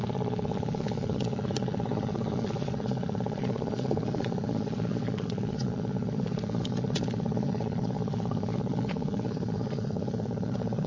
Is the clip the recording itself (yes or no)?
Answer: no